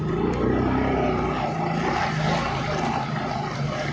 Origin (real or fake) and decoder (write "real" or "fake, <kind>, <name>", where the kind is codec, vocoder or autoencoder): real